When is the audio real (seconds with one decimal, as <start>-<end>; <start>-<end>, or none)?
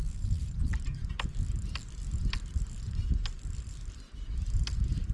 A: 0.0-5.1